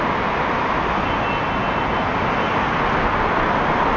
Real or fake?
real